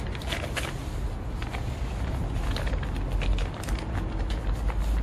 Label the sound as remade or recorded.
recorded